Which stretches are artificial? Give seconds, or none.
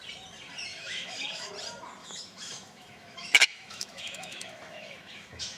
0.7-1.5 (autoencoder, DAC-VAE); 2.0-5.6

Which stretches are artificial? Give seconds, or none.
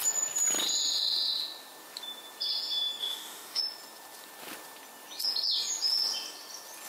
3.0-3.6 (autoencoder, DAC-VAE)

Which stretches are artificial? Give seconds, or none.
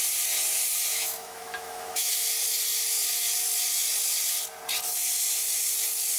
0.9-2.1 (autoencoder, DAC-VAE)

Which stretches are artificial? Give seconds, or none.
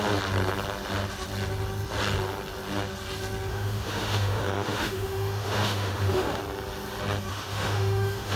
3.5-6.4 (autoencoder, DAC-VAE); 7.3-8.4